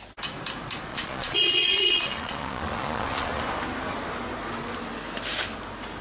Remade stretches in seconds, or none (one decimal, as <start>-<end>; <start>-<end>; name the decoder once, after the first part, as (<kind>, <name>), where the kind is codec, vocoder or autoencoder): 0.9-3.4 (vocoder, Vocos)